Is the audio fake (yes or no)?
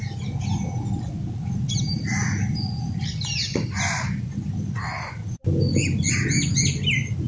no